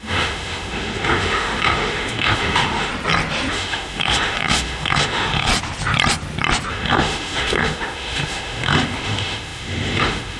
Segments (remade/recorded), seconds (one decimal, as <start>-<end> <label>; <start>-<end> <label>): 0.0-2.9 remade; 2.9-3.5 recorded; 3.5-5.5 remade; 5.5-6.7 recorded; 6.7-10.4 remade